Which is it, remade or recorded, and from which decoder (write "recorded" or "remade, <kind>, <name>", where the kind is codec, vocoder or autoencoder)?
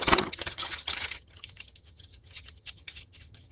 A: remade, vocoder, HiFi-GAN